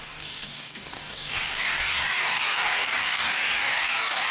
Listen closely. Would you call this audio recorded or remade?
remade